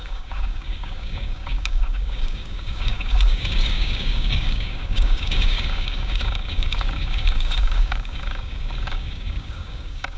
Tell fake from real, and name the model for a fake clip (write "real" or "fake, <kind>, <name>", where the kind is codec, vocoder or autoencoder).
fake, codec, DAC